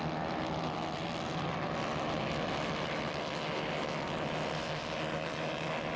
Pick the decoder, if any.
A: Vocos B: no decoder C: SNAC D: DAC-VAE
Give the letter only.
B